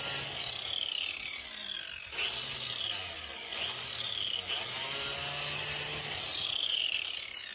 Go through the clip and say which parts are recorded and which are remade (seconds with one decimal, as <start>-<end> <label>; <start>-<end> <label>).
0.0-3.4 recorded; 3.4-3.9 remade; 3.9-6.3 recorded; 6.3-6.9 remade; 6.9-7.5 recorded